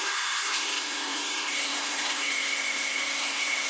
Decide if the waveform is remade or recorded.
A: remade